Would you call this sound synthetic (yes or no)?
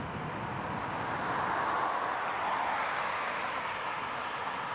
no